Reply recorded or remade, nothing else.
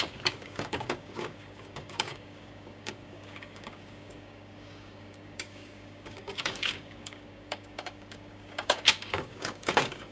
remade